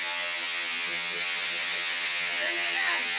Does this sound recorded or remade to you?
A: remade